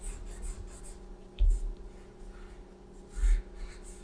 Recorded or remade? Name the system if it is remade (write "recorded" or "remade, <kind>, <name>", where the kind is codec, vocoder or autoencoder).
recorded